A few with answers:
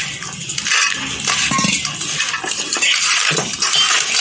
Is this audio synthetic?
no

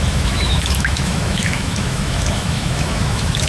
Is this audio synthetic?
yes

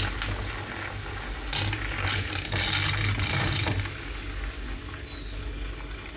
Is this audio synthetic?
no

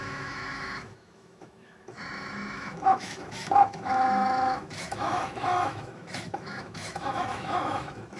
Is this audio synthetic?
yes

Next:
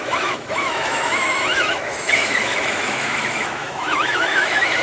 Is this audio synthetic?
yes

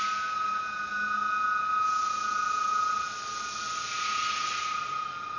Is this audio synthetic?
no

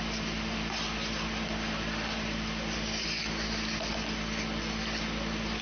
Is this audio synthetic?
no